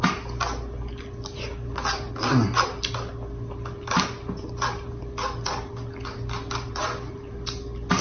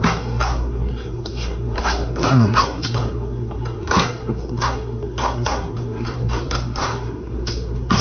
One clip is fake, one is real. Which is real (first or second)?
first